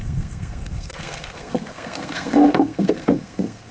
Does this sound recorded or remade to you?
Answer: remade